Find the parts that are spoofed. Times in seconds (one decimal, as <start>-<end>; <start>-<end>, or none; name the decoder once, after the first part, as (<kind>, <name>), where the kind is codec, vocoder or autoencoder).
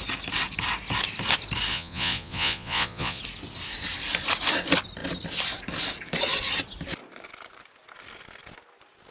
1.7-3.2 (vocoder, Vocos)